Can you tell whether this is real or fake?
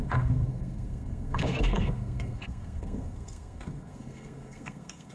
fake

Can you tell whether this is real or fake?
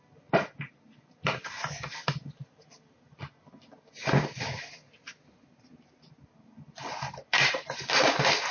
real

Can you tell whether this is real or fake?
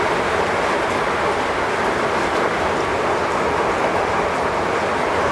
real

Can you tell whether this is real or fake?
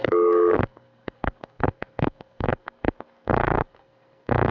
fake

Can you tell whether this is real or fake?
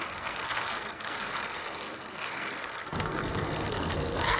fake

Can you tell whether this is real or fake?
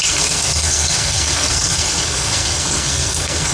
fake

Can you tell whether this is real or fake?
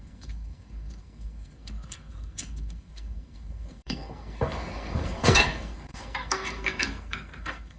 fake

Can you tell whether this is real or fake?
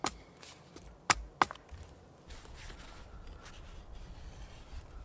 real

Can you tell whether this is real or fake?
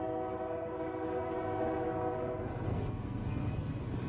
fake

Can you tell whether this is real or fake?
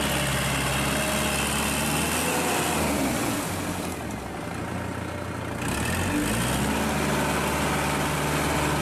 real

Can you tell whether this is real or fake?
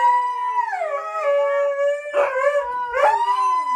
real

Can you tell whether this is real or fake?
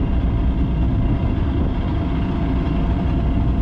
real